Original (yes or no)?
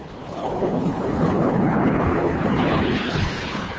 no